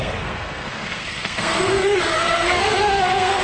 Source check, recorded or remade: remade